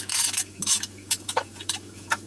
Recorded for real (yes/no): no